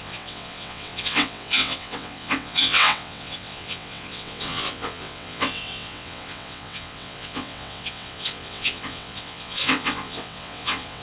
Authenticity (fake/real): fake